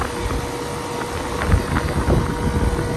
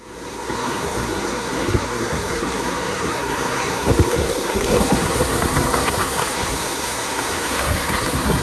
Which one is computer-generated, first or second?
second